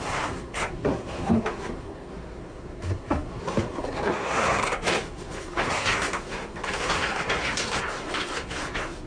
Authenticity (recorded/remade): remade